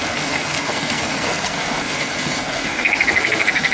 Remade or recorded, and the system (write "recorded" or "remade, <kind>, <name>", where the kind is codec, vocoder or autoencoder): remade, codec, SNAC